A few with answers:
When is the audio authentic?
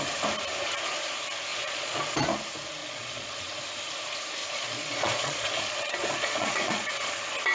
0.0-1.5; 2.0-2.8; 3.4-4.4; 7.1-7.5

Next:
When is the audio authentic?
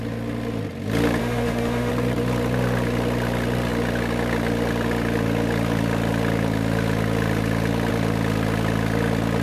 0.0-1.2; 1.9-9.4